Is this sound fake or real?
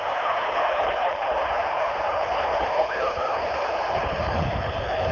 fake